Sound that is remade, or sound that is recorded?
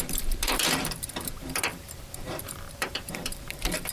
remade